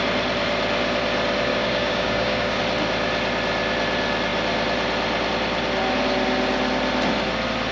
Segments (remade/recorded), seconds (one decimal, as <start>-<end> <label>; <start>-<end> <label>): 0.0-1.5 recorded; 1.5-2.6 remade; 2.6-7.7 recorded